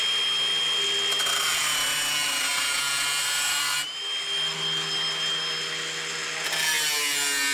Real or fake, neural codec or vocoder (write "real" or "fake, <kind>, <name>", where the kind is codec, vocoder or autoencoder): real